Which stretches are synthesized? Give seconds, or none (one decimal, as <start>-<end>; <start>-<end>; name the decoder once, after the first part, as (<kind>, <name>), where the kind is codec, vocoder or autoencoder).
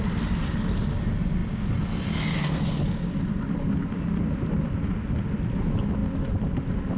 none